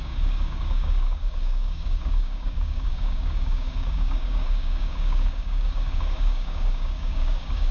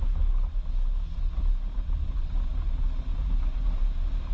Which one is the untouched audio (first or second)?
second